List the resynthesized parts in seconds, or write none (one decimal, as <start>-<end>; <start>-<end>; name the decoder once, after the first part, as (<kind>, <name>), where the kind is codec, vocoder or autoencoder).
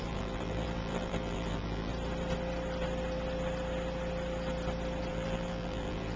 0.0-1.9 (vocoder, BigVGAN v2); 5.1-6.2